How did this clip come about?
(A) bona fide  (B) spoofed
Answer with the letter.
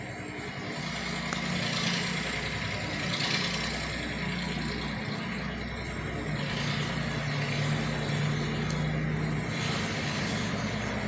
A